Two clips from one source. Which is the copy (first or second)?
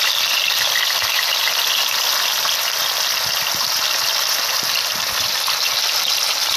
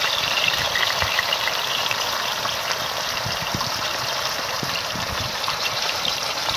second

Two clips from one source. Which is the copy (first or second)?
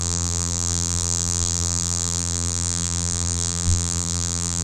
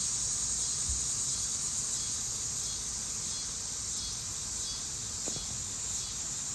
first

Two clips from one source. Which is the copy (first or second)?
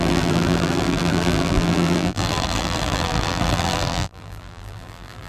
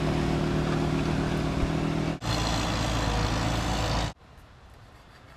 first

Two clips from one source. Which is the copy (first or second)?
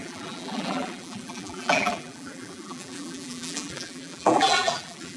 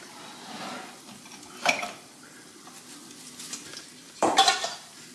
first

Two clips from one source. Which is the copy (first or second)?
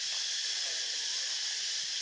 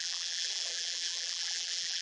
second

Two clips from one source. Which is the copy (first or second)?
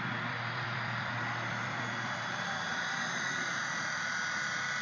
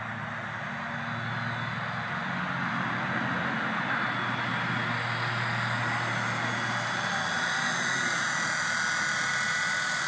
first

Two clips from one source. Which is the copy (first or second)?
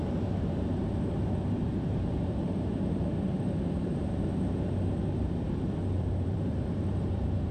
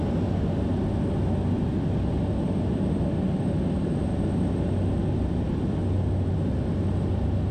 first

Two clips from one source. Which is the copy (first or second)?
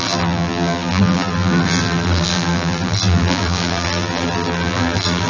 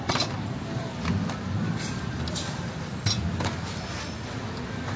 first